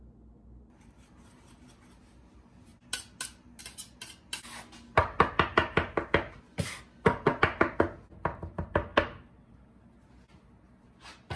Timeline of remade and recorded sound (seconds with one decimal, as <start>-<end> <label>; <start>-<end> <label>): 0.0-11.4 recorded